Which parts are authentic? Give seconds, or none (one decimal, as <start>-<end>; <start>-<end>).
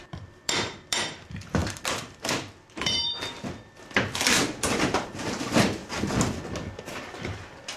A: 5.8-6.8